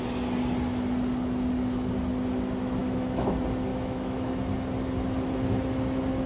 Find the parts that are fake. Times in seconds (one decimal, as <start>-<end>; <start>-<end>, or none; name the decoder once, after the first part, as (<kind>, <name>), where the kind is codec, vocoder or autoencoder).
2.8-3.3 (autoencoder, DAC-VAE); 3.7-4.3